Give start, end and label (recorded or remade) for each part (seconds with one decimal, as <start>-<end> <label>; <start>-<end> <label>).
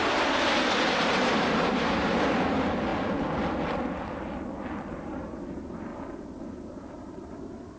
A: 0.0-2.9 remade; 2.9-4.9 recorded; 4.9-5.9 remade; 5.9-6.5 recorded; 6.5-7.8 remade